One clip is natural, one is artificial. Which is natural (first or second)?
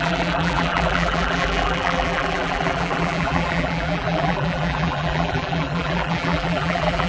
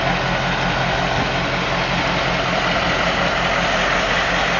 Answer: second